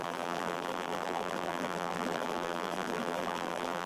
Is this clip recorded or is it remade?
remade